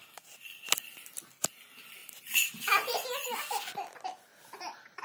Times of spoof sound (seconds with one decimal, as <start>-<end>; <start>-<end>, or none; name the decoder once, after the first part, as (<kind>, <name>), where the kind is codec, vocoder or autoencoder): 2.0-2.5 (vocoder, BigVGAN v2); 4.3-5.0